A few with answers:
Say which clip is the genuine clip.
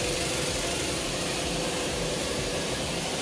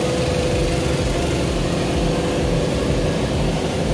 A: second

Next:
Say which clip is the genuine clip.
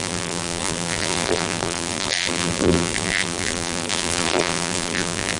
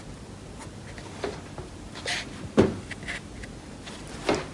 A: second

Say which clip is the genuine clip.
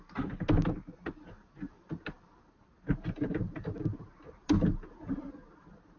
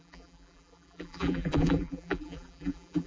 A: first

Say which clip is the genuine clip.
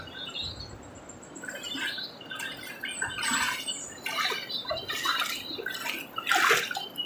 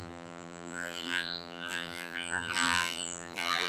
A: first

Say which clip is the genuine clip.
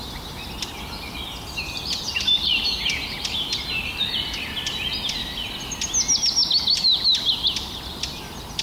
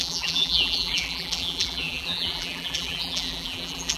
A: first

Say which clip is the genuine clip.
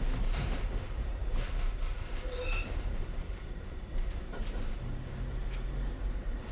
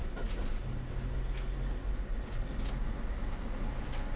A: second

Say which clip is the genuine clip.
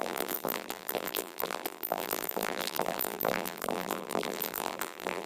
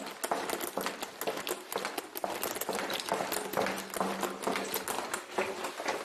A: second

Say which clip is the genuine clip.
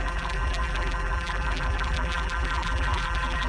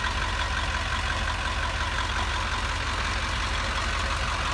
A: second